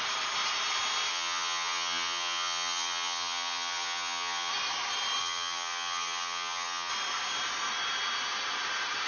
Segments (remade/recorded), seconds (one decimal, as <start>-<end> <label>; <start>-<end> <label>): 0.0-1.1 recorded; 1.1-4.5 remade; 4.5-5.2 recorded; 5.2-6.9 remade; 6.9-9.1 recorded